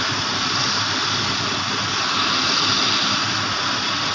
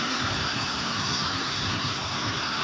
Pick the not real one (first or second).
second